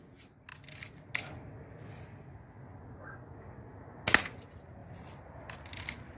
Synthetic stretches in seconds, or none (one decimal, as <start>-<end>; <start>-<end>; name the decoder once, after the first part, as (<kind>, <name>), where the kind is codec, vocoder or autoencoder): none